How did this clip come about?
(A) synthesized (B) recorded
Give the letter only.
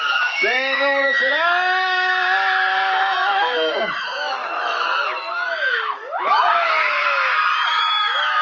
A